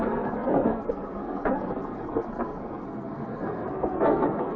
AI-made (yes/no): yes